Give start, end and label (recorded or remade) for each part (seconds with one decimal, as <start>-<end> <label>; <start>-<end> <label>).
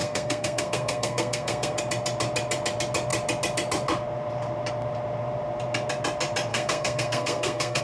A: 0.0-1.8 remade; 1.8-6.5 recorded; 6.5-7.8 remade